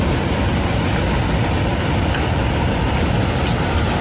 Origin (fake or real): real